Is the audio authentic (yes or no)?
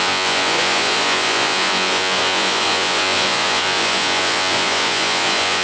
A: no